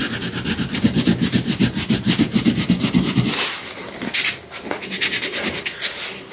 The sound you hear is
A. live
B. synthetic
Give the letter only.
A